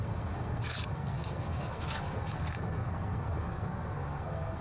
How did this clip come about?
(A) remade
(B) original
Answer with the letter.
A